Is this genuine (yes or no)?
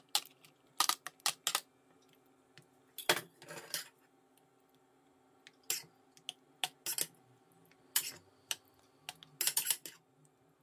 yes